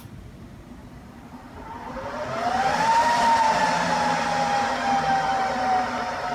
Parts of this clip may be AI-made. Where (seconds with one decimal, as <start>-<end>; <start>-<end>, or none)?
0.8-4.1; 5.3-6.3